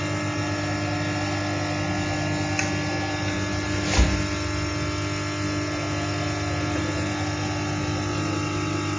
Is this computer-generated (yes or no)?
no